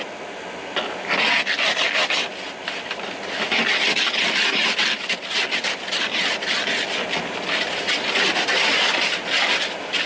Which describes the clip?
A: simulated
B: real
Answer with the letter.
B